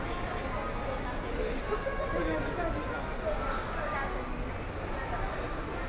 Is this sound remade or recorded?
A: recorded